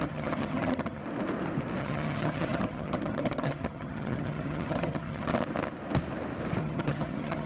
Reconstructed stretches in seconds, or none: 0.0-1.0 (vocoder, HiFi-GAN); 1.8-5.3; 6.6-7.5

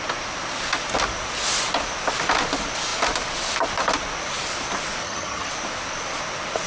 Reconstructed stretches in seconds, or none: 5.0-5.5 (vocoder, HiFi-GAN)

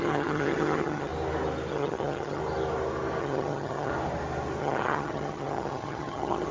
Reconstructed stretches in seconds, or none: 0.0-1.1 (vocoder, HiFi-GAN); 1.7-2.4; 3.2-3.9; 4.6-6.5

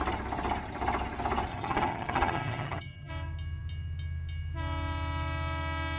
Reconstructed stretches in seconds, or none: 1.5-3.1 (vocoder, HiFi-GAN)

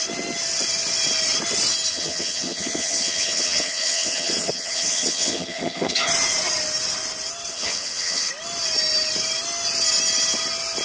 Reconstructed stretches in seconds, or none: 1.9-6.1 (vocoder, HiFi-GAN); 7.5-8.3

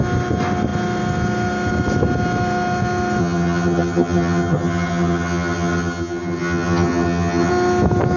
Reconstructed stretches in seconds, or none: 3.2-7.5 (vocoder, HiFi-GAN)

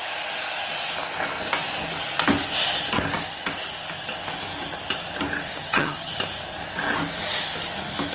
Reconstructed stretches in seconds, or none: 5.6-6.1 (vocoder, HiFi-GAN)

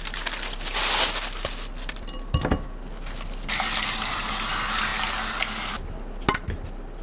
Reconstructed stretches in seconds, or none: none